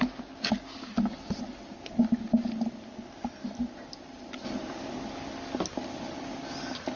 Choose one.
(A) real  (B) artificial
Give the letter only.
A